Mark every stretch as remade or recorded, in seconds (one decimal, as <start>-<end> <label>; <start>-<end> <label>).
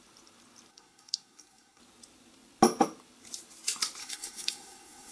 0.0-0.7 recorded; 0.7-1.8 remade; 1.8-4.0 recorded; 4.0-5.1 remade